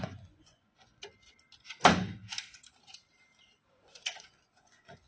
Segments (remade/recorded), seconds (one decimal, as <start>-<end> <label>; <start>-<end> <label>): 0.0-1.0 remade; 1.0-3.7 recorded; 3.7-5.1 remade